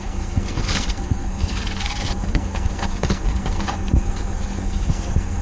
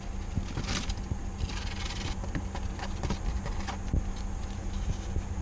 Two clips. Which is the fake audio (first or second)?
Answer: first